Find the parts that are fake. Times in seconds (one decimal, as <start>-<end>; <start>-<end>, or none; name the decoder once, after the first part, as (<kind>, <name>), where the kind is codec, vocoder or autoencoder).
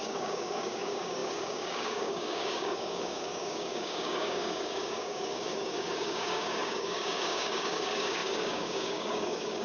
0.0-9.6 (codec, DAC)